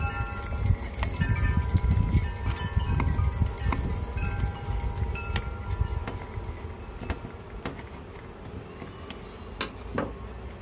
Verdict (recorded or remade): recorded